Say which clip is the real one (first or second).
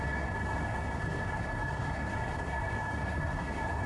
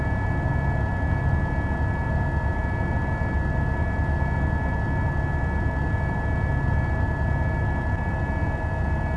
second